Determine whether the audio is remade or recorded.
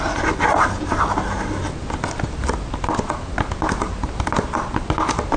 recorded